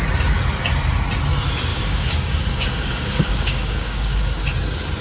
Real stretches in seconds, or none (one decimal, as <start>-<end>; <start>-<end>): 0.0-1.7; 4.4-5.0